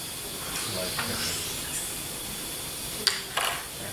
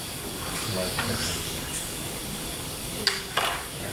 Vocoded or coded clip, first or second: second